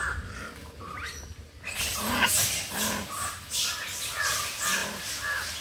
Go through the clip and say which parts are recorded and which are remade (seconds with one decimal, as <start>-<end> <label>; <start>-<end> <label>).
0.0-5.6 recorded

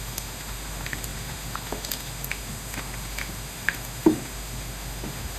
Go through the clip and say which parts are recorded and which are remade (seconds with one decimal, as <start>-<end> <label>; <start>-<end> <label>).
0.0-5.4 remade

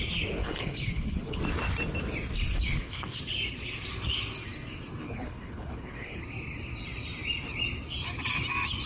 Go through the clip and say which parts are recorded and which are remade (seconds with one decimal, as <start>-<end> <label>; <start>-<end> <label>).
0.0-0.4 recorded; 0.4-1.4 remade; 1.4-2.5 recorded; 2.5-3.2 remade; 3.2-5.0 recorded; 5.0-6.2 remade; 6.2-8.9 recorded

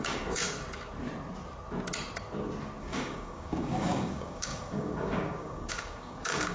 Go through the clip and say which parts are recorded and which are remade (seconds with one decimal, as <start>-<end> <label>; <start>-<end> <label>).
0.0-0.4 remade; 0.4-2.8 recorded; 2.8-6.5 remade

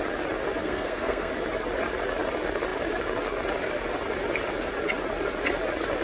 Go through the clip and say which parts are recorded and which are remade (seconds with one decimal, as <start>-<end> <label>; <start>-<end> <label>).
0.0-0.6 recorded; 0.6-1.3 remade; 1.3-6.0 recorded